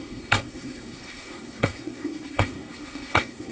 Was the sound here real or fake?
fake